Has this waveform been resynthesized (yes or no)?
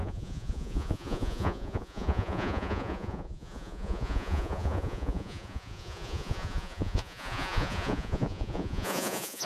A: yes